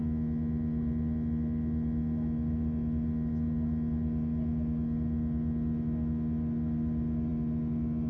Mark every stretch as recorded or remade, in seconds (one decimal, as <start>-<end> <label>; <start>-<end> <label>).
0.0-8.1 recorded